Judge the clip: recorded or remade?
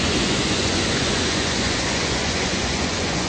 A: remade